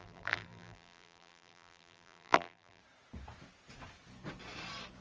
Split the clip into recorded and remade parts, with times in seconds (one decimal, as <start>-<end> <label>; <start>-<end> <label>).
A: 0.0-2.8 remade; 2.8-5.0 recorded